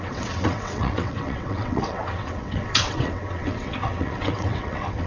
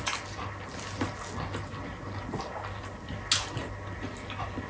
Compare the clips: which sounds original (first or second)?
second